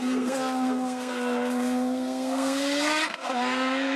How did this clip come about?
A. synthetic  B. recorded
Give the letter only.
A